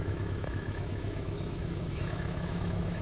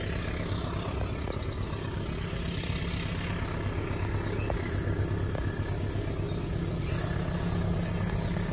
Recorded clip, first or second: second